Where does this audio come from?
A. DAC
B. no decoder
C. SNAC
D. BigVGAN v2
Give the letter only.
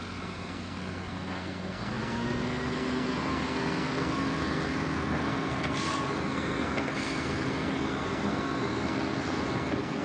C